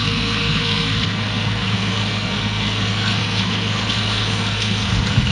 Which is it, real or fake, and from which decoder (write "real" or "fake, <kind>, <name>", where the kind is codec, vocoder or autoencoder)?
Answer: fake, codec, SNAC